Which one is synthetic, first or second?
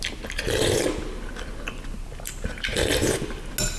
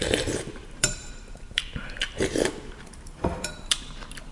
second